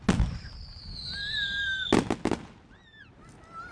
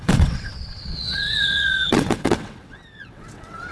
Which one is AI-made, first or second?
second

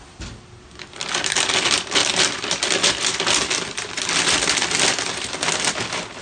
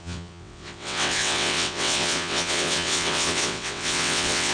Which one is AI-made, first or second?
second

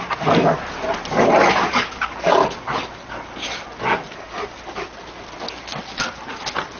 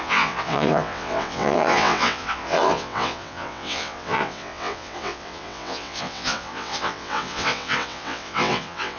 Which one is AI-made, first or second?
second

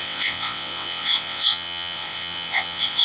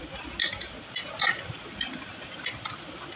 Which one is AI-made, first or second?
first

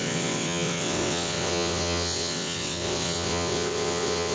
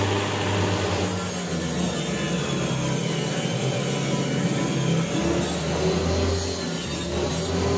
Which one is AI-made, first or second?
first